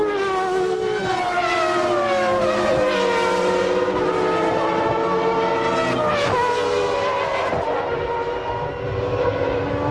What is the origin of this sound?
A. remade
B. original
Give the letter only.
B